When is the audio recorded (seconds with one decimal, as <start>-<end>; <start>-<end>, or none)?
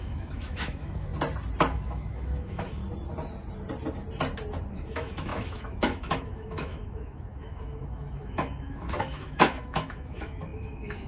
1.1-1.7; 2.8-4.7